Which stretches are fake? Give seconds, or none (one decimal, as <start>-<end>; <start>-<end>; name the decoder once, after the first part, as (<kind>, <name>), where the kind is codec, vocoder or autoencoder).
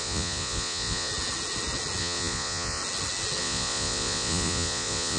0.0-1.1 (vocoder, Vocos); 2.0-2.8; 3.4-5.2